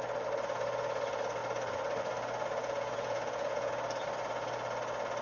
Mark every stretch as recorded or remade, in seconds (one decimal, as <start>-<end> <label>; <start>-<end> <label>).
0.0-2.6 recorded; 2.6-3.7 remade; 3.7-5.2 recorded